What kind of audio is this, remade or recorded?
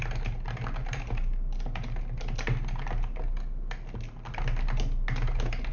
recorded